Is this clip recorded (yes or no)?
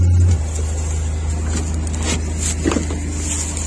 yes